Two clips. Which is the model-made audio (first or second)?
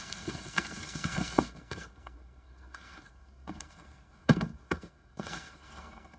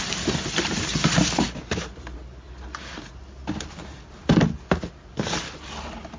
first